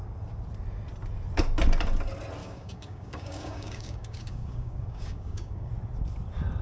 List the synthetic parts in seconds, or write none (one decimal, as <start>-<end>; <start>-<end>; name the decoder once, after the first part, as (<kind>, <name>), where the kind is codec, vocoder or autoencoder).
2.4-5.7 (codec, DAC)